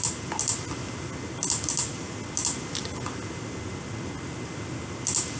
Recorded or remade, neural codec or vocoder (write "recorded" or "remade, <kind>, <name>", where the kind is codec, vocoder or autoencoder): recorded